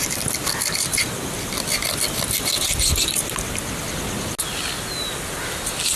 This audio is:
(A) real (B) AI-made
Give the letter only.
A